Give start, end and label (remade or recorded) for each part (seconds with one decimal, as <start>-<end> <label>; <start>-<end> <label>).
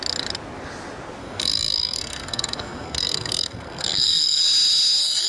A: 0.0-1.2 recorded; 1.2-4.4 remade; 4.4-5.3 recorded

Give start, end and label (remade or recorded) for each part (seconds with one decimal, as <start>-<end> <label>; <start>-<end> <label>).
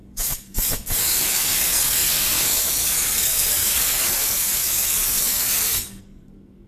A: 0.0-6.7 remade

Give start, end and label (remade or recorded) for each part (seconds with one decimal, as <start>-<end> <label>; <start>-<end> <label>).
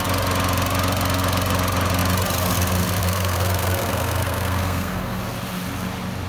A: 0.0-3.0 recorded; 3.0-5.2 remade; 5.2-6.3 recorded